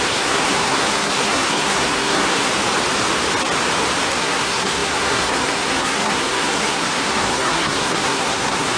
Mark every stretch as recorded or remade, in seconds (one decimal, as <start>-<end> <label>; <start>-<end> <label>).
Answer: 0.0-2.5 remade; 2.5-4.1 recorded; 4.1-8.8 remade